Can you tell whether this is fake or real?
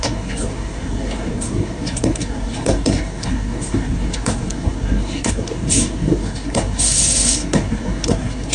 fake